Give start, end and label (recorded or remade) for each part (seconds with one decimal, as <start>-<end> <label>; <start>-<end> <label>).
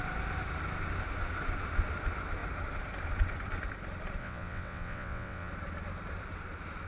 0.0-4.2 recorded; 4.2-5.5 remade; 5.5-6.9 recorded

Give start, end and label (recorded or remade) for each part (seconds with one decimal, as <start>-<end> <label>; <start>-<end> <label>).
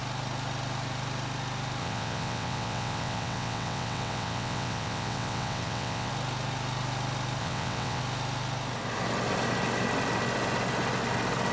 0.0-1.8 recorded; 1.8-6.1 remade; 6.1-7.4 recorded; 7.4-8.0 remade; 8.0-11.5 recorded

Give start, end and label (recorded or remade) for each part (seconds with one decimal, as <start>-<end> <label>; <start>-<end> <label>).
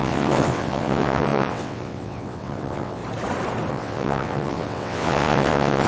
0.0-3.0 remade; 3.0-3.7 recorded; 3.7-5.9 remade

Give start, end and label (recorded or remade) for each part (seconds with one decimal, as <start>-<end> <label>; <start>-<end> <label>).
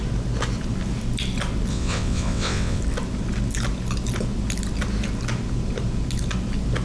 0.0-1.7 recorded; 1.7-2.8 remade; 2.8-6.8 recorded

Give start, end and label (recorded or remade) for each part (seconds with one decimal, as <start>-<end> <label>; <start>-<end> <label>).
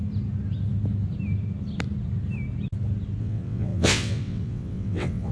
0.0-3.2 recorded; 3.2-5.3 remade